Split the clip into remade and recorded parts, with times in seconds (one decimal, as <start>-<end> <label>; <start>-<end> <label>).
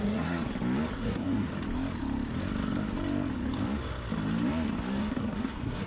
0.0-0.4 remade; 0.4-1.0 recorded; 1.0-1.5 remade; 1.5-5.0 recorded; 5.0-5.9 remade